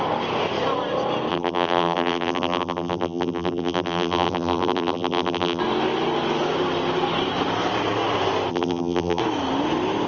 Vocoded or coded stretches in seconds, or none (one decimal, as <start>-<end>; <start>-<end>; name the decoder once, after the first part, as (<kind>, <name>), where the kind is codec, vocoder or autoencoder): 1.3-5.6 (vocoder, BigVGAN v2); 8.5-9.2